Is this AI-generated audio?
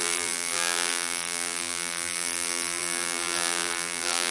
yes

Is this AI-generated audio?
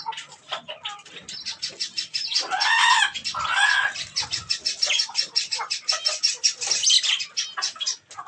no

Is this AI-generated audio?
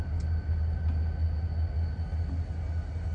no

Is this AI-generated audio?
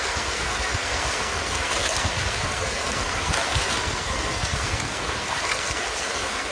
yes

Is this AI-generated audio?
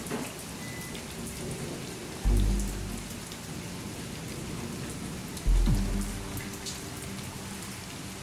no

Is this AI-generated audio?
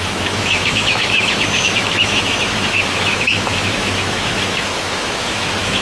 yes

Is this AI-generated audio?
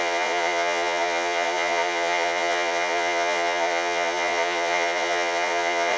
yes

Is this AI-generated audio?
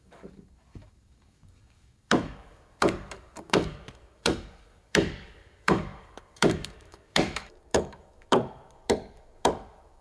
yes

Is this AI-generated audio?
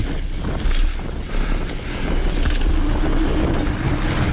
no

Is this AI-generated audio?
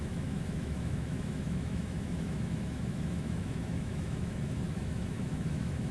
yes